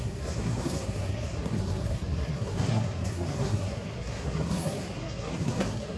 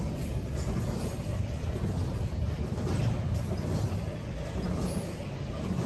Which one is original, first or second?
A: second